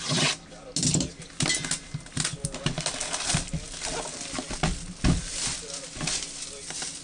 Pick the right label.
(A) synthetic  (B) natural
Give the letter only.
B